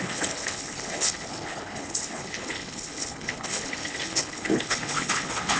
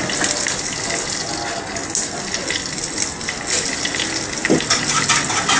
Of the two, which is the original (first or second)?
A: second